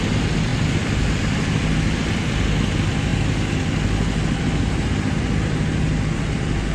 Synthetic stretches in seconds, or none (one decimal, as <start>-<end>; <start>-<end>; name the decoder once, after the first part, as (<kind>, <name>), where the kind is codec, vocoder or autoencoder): 0.5-2.0 (vocoder, BigVGAN v2)